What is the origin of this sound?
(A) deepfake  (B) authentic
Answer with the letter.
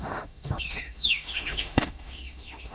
A